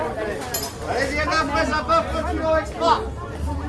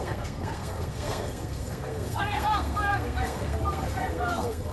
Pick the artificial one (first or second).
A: second